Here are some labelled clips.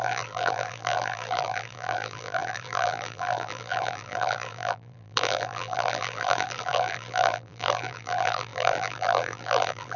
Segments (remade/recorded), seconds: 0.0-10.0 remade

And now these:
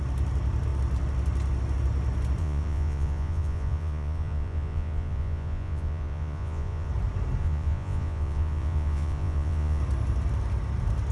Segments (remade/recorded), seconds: 0.0-2.4 recorded; 2.4-6.9 remade; 6.9-7.4 recorded; 7.4-9.8 remade; 9.8-11.1 recorded